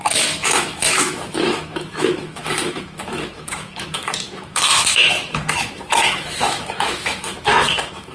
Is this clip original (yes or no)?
no